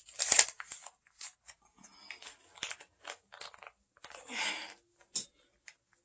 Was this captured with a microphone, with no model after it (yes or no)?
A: yes